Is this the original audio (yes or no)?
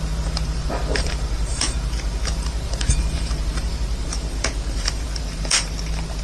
no